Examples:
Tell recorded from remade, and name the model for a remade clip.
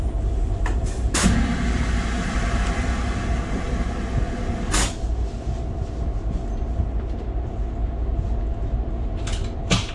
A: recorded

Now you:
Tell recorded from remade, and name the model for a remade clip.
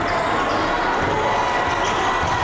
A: recorded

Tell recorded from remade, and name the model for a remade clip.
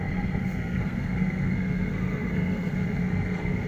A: remade, codec, SNAC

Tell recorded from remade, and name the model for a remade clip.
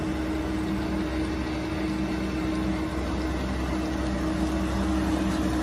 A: recorded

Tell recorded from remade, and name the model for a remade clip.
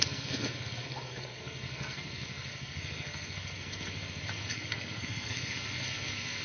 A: remade, codec, SNAC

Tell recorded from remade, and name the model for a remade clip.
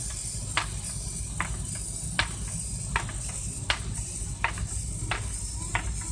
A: recorded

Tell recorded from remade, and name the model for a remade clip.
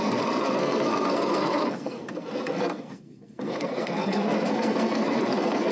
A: remade, codec, SNAC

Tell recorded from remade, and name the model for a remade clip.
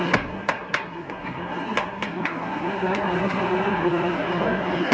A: remade, codec, SNAC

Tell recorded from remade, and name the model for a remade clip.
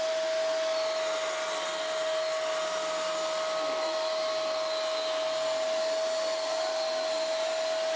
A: recorded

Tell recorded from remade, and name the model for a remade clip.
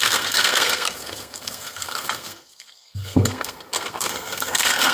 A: remade, codec, SNAC